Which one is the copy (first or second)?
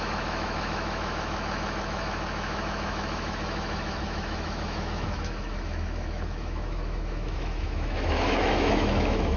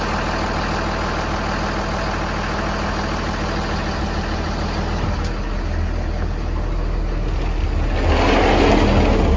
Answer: first